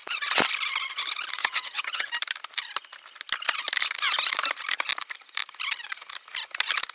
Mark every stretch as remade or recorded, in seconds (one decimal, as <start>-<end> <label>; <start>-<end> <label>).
0.0-1.4 recorded; 1.4-2.1 remade; 2.1-6.9 recorded